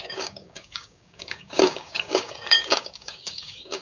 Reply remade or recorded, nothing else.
remade